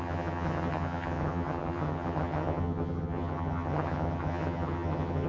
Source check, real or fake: fake